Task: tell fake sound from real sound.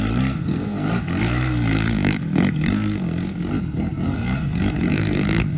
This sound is fake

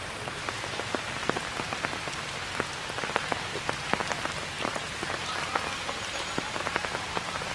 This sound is real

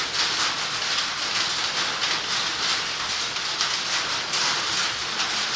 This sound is real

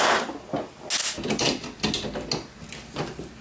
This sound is real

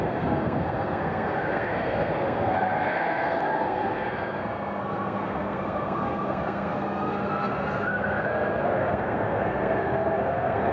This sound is fake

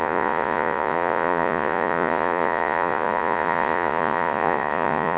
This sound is fake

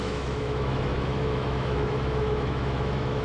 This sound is fake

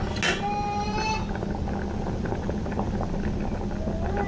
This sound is real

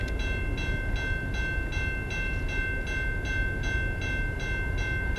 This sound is real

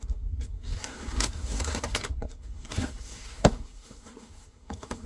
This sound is fake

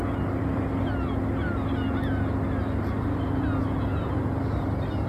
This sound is real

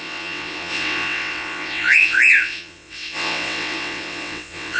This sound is fake